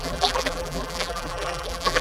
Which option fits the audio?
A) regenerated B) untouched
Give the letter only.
A